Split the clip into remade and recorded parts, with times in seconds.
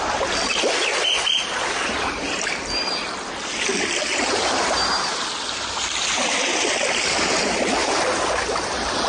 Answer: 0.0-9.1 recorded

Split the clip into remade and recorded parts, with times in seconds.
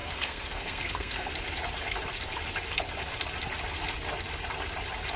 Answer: 0.0-1.3 remade; 1.3-5.2 recorded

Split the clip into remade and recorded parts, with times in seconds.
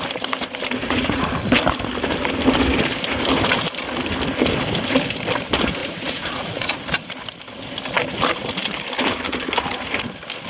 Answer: 0.0-0.8 recorded; 0.8-1.3 remade; 1.3-5.8 recorded; 5.8-6.8 remade; 6.8-10.5 recorded